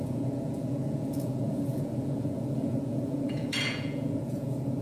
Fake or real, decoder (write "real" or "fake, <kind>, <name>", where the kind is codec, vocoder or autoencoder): fake, vocoder, Vocos